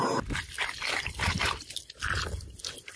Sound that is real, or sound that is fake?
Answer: real